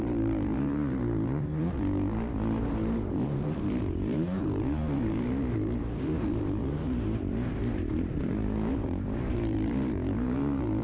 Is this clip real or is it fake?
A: fake